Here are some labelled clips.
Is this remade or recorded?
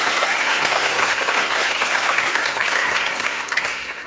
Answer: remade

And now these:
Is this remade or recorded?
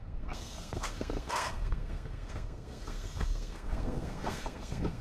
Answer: remade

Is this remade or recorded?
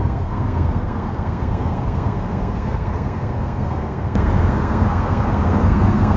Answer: remade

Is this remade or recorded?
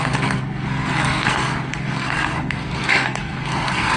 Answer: remade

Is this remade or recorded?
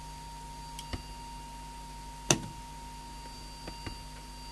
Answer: recorded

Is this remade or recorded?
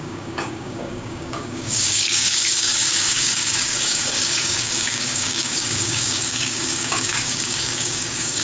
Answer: remade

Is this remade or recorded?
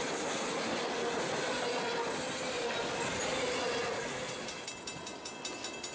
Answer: recorded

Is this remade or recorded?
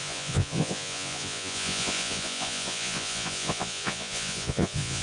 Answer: remade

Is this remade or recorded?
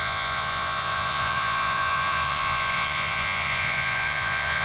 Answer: remade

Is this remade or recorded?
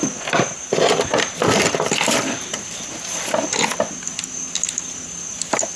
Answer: recorded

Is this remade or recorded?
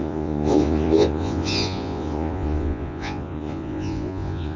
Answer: remade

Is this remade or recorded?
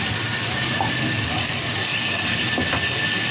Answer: recorded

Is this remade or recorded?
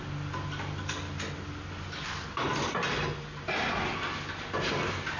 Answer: recorded